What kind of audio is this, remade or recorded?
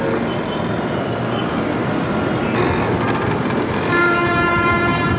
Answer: recorded